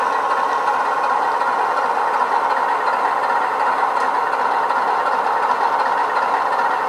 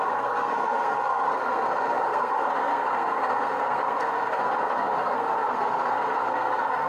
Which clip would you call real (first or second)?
first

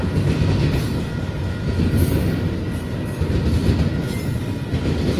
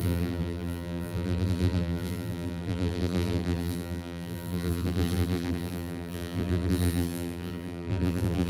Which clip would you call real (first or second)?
first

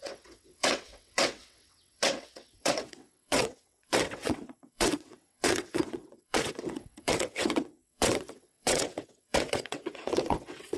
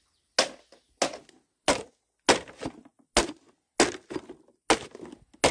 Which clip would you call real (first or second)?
second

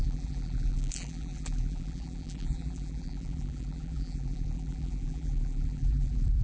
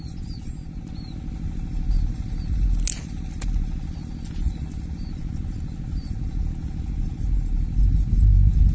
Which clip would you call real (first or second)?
second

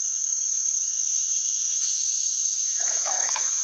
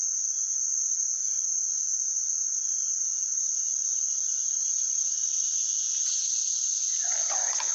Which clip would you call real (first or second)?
second